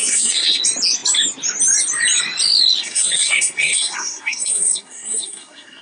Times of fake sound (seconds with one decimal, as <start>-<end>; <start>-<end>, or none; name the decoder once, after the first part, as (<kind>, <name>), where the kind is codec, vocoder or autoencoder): 0.0-0.6 (codec, SNAC); 2.8-5.8